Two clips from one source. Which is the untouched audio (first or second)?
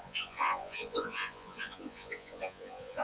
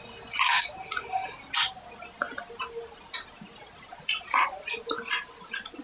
second